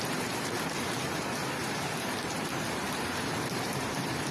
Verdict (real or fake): fake